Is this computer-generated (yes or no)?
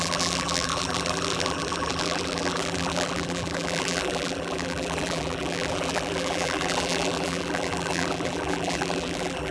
yes